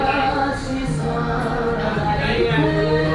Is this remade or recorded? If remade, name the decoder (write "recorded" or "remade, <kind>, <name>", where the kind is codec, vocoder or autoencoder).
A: remade, vocoder, BigVGAN v2